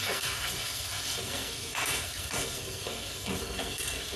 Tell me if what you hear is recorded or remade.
remade